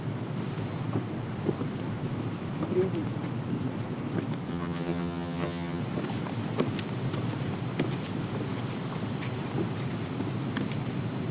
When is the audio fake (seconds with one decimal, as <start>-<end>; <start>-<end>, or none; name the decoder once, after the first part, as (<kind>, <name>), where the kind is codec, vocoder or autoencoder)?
4.5-5.8 (vocoder, HiFi-GAN)